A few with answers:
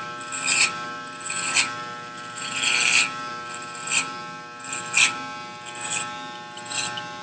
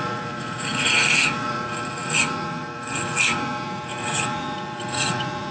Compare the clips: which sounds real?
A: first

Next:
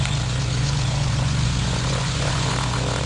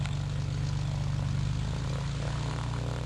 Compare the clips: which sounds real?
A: second